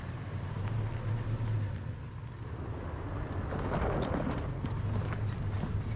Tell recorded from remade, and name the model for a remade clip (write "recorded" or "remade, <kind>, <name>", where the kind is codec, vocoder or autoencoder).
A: recorded